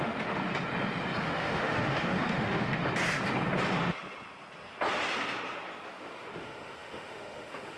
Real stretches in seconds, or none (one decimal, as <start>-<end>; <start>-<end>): 0.4-1.2; 2.8-6.0